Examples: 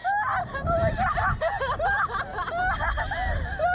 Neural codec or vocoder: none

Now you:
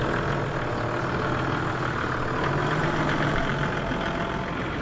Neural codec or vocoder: none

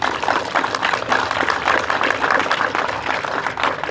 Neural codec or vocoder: none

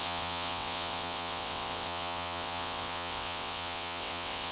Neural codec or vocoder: vocoder, WaveNeXt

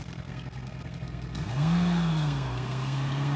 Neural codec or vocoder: codec, SNAC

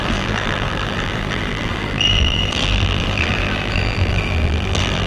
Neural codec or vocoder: vocoder, BigVGAN v2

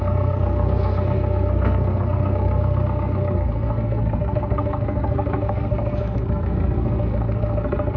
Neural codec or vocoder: codec, SNAC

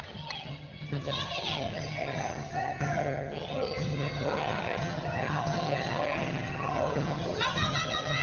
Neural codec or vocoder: vocoder, HiFi-GAN